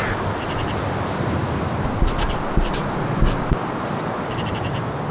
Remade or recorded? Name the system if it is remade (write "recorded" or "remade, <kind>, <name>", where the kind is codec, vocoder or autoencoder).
recorded